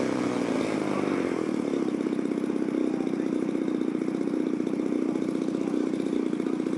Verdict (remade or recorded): recorded